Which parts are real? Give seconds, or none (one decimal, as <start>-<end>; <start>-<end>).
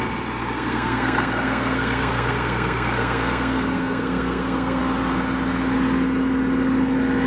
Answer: 0.0-0.4; 4.8-7.3